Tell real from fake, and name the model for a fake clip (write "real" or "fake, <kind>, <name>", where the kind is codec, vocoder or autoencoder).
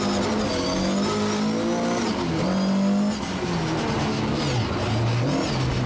real